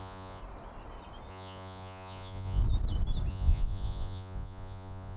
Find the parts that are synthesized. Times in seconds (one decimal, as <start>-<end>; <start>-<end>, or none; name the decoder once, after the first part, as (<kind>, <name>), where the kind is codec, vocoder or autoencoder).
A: 0.0-0.4 (vocoder, Vocos); 1.3-2.6; 3.3-5.2